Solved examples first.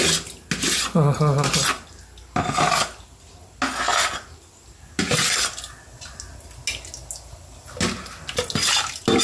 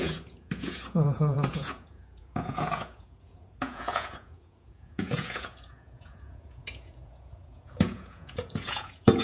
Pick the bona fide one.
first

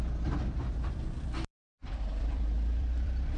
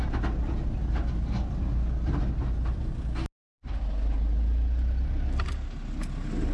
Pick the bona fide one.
second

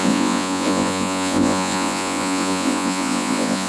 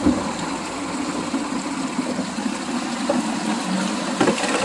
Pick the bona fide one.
second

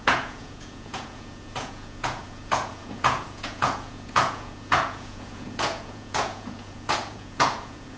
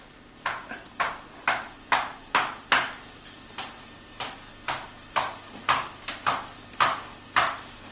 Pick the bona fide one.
second